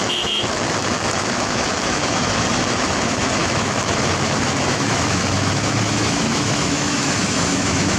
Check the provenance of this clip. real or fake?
fake